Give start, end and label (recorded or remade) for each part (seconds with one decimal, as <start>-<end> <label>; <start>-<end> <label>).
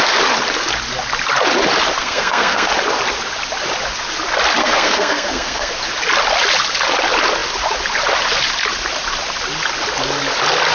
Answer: 0.0-2.0 recorded; 2.0-2.7 remade; 2.7-4.6 recorded; 4.6-5.7 remade; 5.7-10.7 recorded